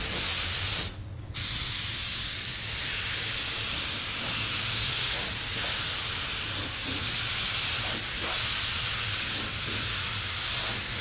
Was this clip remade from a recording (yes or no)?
no